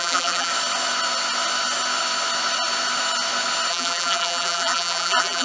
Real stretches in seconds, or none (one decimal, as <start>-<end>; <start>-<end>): 0.5-3.7